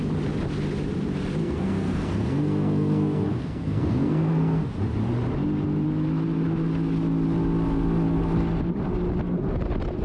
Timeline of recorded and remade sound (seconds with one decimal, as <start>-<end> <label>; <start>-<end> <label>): 0.0-1.4 recorded; 1.4-4.7 remade; 4.7-10.0 recorded